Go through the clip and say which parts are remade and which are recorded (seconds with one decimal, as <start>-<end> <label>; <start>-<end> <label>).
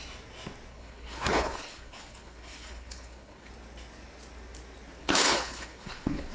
0.0-0.7 recorded; 0.7-3.5 remade; 3.5-5.0 recorded; 5.0-6.3 remade